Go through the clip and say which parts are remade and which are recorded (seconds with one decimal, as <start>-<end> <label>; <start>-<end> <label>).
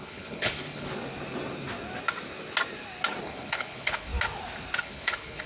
0.0-0.9 remade; 0.9-3.2 recorded; 3.2-4.1 remade; 4.1-4.8 recorded; 4.8-5.5 remade